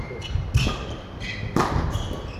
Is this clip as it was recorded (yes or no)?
yes